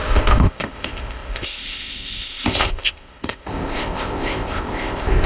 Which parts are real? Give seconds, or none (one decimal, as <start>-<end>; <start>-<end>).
none